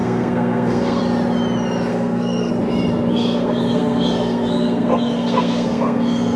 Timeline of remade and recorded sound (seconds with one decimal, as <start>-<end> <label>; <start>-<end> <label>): 0.0-1.0 remade; 1.0-1.9 recorded; 1.9-2.5 remade; 2.5-3.1 recorded; 3.1-6.4 remade